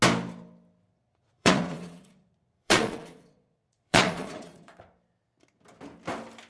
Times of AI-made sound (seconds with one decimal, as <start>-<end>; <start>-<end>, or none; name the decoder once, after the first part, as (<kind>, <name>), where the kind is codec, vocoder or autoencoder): 0.9-4.8 (vocoder, Vocos)